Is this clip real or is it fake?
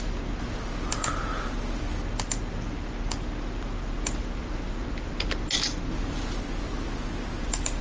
real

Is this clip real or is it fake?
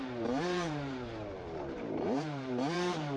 fake